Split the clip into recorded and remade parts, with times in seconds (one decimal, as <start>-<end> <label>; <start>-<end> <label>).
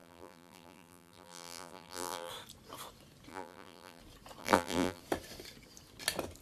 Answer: 0.0-2.3 remade; 2.3-3.3 recorded; 3.3-4.0 remade; 4.0-4.4 recorded; 4.4-5.0 remade; 5.0-6.4 recorded